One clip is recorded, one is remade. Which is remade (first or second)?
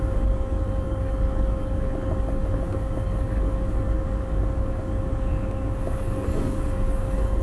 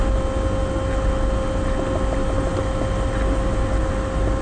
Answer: first